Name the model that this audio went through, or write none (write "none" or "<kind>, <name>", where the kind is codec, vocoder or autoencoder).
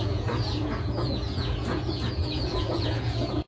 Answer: vocoder, Vocos